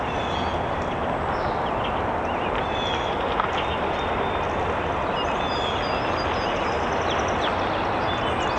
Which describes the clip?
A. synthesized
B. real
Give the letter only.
B